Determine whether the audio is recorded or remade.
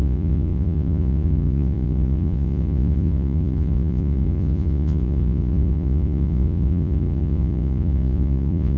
remade